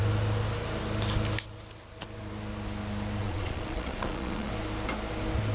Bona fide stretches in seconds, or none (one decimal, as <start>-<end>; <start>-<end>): 0.0-3.2; 4.5-5.5